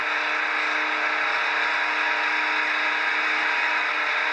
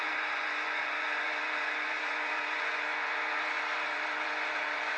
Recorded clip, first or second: first